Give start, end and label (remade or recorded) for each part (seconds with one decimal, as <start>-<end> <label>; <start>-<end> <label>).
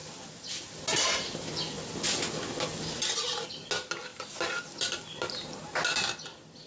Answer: 0.0-6.7 recorded